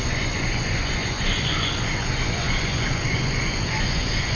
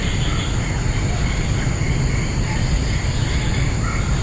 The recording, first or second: second